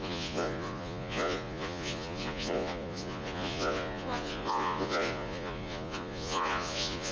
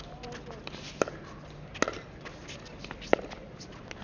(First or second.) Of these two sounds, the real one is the second